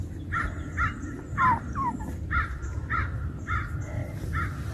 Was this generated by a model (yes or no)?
no